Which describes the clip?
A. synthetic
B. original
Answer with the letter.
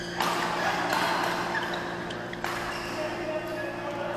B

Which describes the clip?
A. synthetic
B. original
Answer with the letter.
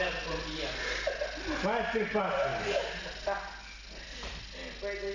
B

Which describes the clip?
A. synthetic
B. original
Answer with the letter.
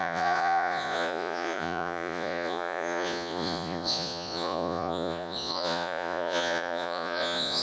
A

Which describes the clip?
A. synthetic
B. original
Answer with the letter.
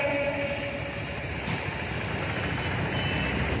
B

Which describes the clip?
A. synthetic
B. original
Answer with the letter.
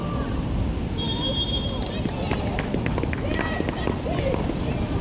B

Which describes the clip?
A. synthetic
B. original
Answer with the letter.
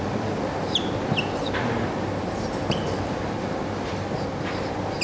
B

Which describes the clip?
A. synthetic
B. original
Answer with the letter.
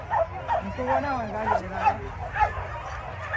B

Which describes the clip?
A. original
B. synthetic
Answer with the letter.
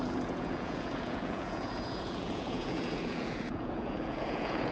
B